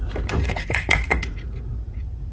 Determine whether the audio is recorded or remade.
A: remade